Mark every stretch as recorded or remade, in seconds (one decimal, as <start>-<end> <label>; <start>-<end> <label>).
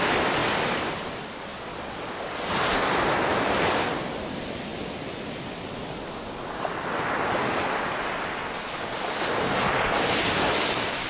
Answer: 0.0-11.1 recorded